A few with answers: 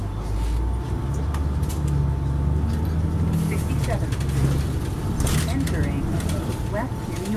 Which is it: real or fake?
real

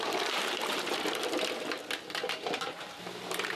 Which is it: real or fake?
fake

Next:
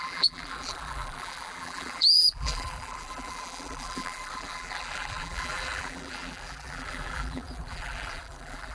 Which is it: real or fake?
fake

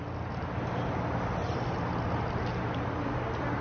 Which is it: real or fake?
real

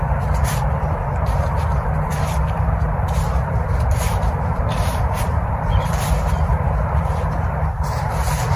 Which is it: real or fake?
fake